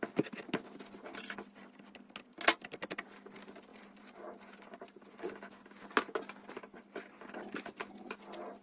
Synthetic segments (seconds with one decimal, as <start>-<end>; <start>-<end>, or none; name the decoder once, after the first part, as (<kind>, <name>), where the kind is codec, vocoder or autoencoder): 3.7-4.2 (vocoder, BigVGAN v2)